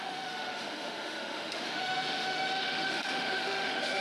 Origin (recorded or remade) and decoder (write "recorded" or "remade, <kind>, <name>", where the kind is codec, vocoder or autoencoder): remade, autoencoder, DAC-VAE